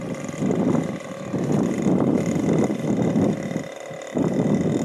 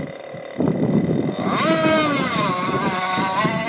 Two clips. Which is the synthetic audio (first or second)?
second